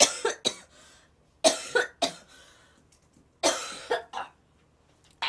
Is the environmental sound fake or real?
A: real